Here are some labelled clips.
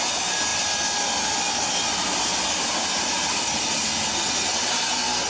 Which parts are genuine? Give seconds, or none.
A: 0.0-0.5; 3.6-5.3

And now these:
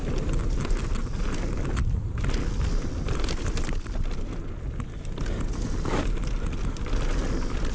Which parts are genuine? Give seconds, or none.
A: 0.0-7.7